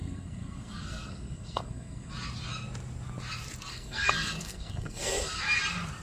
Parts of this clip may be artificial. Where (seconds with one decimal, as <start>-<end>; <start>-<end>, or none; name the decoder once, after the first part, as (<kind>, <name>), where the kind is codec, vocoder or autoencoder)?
0.0-2.1 (codec, SNAC); 3.7-5.4